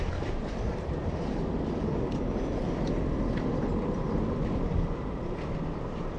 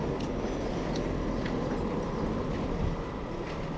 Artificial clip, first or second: first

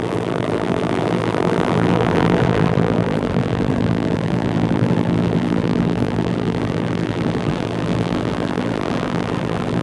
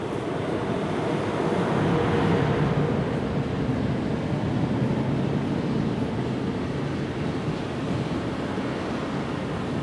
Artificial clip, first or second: first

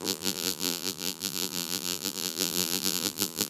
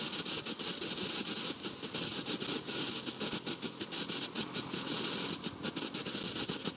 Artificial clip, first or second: first